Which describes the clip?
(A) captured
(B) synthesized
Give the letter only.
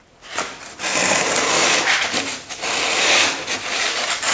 A